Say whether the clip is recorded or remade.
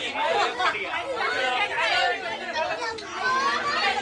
recorded